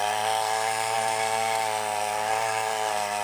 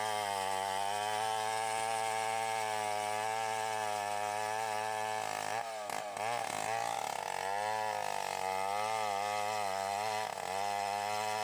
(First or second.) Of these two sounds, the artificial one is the first